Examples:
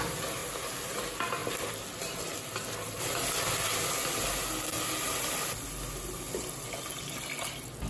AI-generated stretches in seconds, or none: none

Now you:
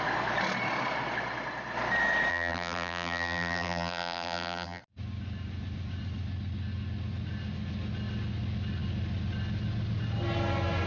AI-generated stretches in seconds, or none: 2.3-4.8 (vocoder, BigVGAN v2)

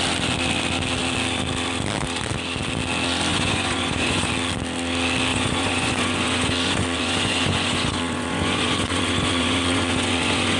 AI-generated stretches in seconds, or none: 3.3-4.3 (vocoder, Vocos); 5.3-10.6

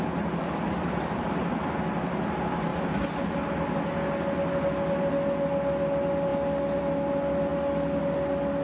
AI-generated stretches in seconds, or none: none

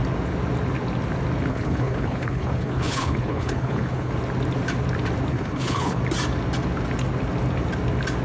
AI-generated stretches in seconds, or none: 1.5-4.1 (codec, HILCodec); 5.3-6.0

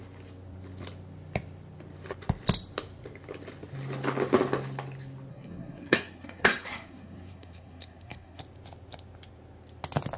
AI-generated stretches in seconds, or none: 5.3-8.4 (codec, SNAC)

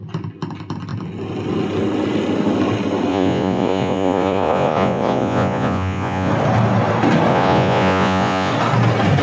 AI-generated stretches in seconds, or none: 3.1-6.3 (vocoder, Vocos); 7.3-8.5